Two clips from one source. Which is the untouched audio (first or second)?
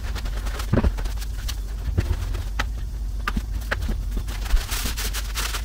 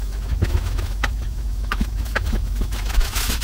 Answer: first